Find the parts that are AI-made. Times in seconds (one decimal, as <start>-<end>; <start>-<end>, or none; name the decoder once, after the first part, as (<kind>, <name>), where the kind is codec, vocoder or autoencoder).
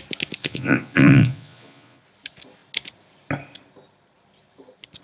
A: 0.4-2.0 (vocoder, Vocos)